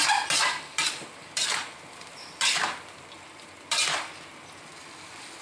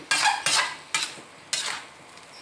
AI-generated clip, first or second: first